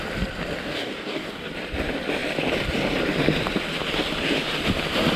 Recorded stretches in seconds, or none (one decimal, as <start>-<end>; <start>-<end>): 0.0-0.6; 1.5-5.2